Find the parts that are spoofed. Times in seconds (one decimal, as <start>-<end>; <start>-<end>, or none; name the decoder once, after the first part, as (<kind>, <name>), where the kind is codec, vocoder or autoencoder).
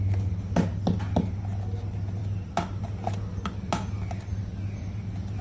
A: none